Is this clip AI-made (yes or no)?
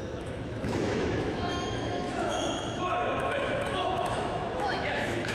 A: yes